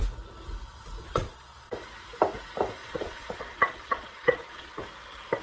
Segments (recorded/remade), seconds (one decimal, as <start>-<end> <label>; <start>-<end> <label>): 0.0-1.0 recorded; 1.0-1.7 remade; 1.7-2.8 recorded; 2.8-4.7 remade; 4.7-5.4 recorded